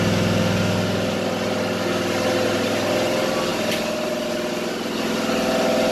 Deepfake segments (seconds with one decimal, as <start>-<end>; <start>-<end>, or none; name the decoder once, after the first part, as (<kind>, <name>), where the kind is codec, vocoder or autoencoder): none